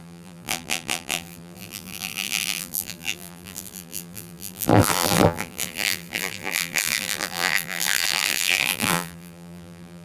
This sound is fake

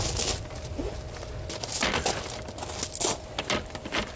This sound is real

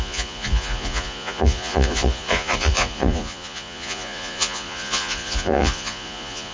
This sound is fake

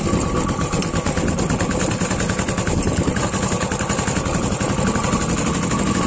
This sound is real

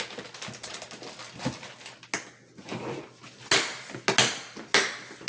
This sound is real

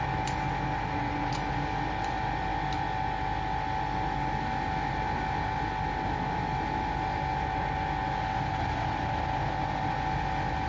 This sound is real